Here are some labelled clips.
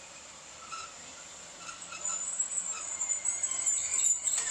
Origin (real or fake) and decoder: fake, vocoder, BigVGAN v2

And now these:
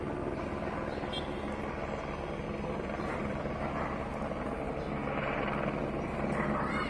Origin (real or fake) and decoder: real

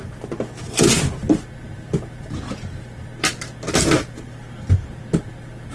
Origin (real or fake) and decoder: real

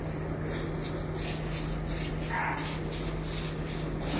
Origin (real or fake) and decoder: real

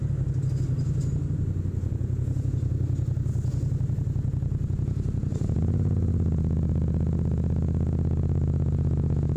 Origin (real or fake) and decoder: real